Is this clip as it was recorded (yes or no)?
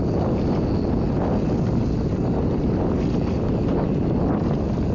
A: yes